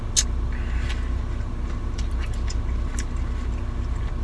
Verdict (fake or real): real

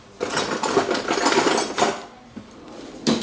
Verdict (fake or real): real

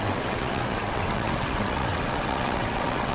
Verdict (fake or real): fake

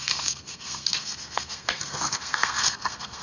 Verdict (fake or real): fake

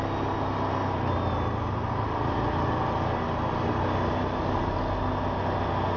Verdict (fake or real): real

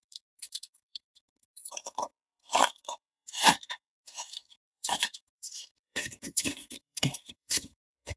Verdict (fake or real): fake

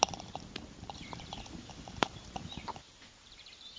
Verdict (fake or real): fake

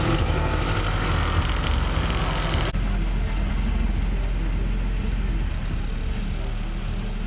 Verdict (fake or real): real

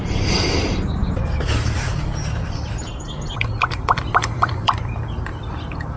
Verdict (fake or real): fake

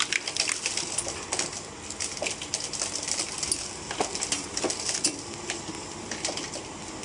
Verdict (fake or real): real